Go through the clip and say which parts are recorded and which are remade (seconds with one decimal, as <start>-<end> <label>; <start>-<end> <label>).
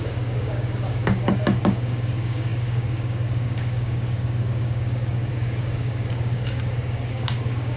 0.0-7.8 remade